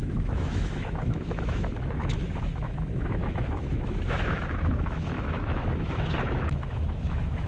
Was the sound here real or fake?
fake